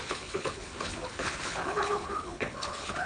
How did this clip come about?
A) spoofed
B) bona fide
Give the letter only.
A